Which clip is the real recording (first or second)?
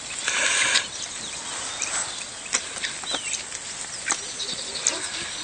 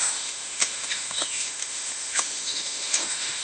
first